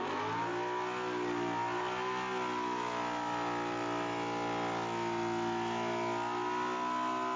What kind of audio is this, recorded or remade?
recorded